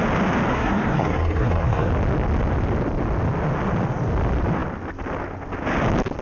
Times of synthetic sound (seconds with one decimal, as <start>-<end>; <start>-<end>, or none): 0.5-1.9